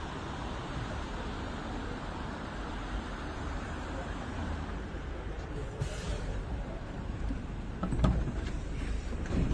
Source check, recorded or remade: remade